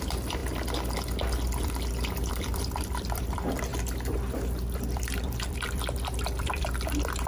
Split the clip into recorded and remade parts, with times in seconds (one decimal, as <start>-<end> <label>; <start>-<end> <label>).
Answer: 0.0-0.4 remade; 0.4-2.3 recorded; 2.3-3.7 remade; 3.7-4.8 recorded; 4.8-7.3 remade

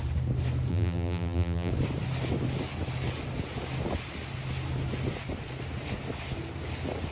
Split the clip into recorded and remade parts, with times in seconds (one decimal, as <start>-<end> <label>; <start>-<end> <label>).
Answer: 0.0-0.7 recorded; 0.7-1.7 remade; 1.7-7.1 recorded

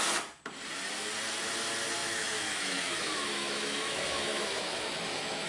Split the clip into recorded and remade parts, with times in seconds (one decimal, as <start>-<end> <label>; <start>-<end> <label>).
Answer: 0.0-2.0 recorded; 2.0-5.5 remade